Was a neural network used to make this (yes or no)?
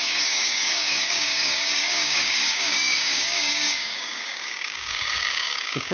yes